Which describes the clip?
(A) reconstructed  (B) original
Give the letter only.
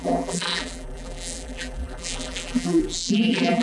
A